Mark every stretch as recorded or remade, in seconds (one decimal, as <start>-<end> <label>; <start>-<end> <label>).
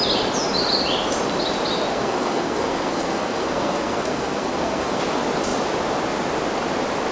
0.0-1.9 recorded; 1.9-5.0 remade; 5.0-7.1 recorded